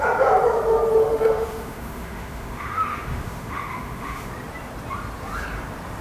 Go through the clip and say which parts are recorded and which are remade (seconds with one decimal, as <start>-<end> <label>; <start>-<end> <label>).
0.0-1.0 recorded; 1.0-4.3 remade; 4.3-6.0 recorded